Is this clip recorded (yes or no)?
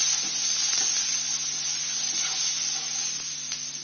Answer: yes